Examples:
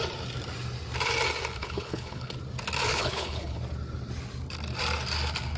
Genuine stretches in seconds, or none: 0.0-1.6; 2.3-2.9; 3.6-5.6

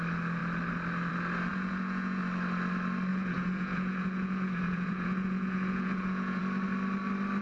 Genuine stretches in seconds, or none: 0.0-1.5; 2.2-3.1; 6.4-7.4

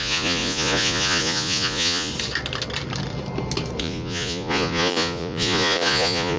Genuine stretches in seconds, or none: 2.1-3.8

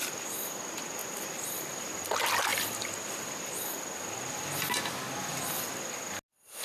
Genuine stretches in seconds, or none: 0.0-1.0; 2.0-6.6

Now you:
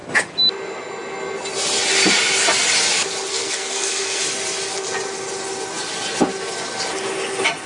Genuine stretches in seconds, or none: 0.0-3.3; 4.2-7.7